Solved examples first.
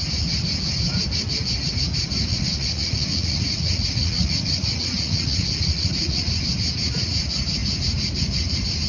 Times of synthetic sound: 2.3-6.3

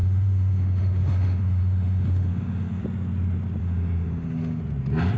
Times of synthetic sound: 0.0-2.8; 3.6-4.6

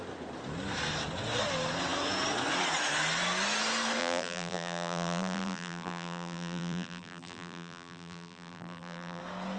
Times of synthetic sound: 4.0-9.2

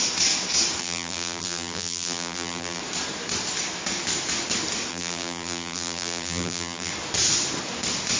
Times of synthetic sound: 0.8-2.8; 4.9-6.9